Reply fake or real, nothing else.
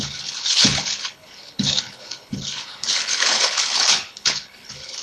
fake